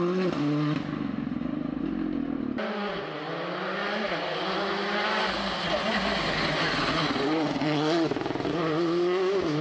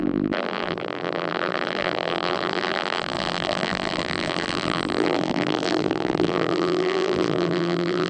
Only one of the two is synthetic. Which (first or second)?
second